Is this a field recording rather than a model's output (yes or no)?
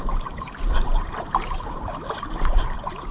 no